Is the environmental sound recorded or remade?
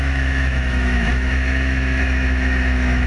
remade